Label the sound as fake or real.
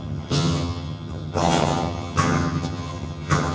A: fake